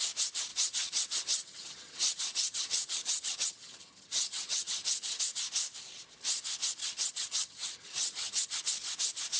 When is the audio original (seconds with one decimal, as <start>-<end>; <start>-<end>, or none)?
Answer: 0.0-0.5; 5.2-6.8; 8.6-9.4

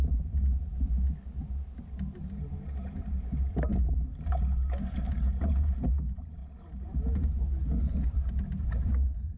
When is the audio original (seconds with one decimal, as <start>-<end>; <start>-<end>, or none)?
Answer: 0.7-1.8; 3.7-5.4; 6.4-8.3

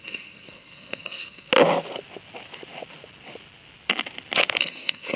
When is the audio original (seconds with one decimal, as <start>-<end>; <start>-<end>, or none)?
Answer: 1.5-4.6

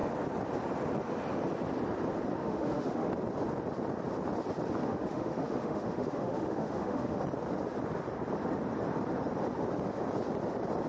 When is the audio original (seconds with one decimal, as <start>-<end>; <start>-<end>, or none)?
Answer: 0.0-2.4; 3.1-4.8; 7.2-10.9

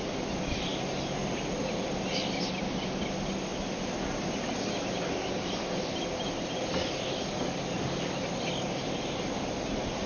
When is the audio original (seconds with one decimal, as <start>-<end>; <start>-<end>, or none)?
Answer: 0.0-10.1

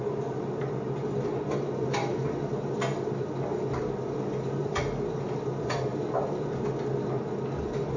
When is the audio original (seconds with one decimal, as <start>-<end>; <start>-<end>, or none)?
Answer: 0.0-8.0

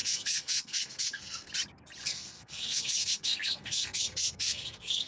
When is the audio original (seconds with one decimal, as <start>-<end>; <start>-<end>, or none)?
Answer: 1.5-2.0

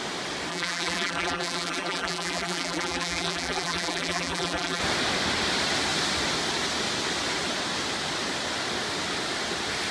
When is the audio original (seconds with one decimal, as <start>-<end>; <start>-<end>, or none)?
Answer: 0.0-0.5; 4.8-9.9